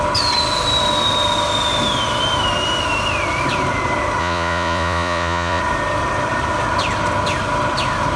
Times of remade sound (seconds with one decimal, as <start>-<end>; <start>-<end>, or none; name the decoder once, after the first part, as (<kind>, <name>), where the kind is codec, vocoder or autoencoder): 4.2-5.6 (vocoder, Vocos)